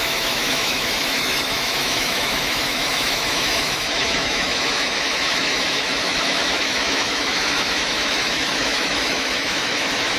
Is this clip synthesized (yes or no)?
yes